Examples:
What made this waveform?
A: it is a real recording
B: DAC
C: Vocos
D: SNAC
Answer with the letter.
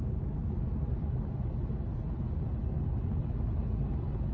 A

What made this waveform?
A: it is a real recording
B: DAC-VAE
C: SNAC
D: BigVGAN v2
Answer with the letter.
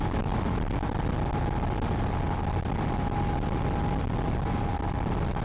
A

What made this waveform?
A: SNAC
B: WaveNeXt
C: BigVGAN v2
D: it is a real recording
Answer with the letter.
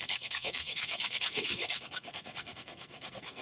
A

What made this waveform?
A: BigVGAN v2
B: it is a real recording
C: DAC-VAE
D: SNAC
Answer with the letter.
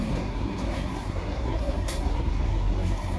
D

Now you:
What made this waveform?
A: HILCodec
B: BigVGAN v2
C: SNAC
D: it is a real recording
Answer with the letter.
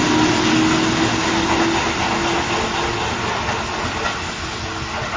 D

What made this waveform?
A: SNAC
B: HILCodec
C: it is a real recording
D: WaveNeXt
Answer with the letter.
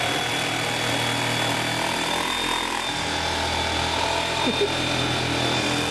C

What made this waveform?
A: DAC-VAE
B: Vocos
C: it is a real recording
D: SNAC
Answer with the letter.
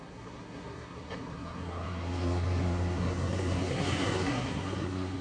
D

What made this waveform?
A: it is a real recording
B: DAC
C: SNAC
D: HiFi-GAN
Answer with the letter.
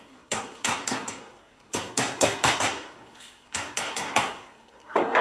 C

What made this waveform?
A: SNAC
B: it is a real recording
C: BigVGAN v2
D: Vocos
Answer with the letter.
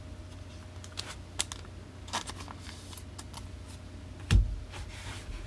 B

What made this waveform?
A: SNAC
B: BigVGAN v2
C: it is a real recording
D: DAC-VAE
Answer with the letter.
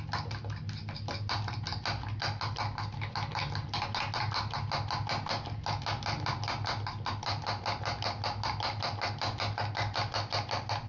C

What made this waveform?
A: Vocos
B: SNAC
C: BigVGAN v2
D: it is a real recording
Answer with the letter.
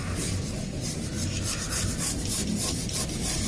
D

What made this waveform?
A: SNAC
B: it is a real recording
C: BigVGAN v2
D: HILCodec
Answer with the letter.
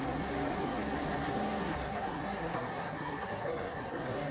A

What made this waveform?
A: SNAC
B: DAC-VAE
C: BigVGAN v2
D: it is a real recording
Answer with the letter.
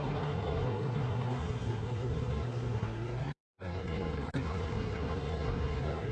A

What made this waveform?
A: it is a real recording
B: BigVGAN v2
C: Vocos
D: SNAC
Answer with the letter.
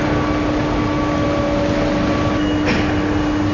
A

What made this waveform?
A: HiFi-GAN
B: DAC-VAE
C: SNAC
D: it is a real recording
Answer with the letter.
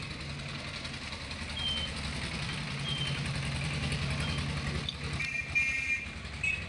D